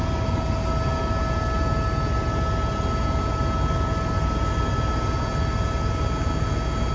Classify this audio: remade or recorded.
recorded